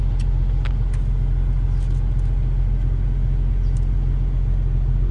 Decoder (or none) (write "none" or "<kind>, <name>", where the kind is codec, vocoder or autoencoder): none